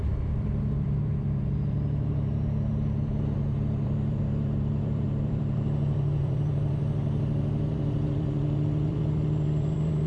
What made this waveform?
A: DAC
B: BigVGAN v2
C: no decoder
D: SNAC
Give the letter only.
B